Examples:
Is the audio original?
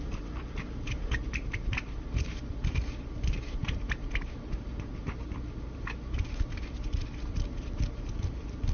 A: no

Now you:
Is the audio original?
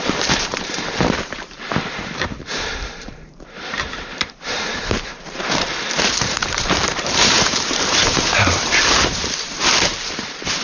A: no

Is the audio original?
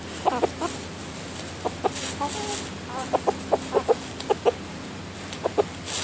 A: yes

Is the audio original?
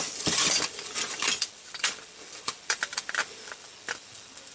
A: no